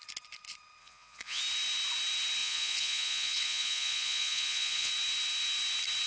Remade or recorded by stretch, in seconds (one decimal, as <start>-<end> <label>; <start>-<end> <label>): 0.0-0.8 recorded; 0.8-1.4 remade; 1.4-2.4 recorded; 2.4-4.9 remade; 4.9-6.1 recorded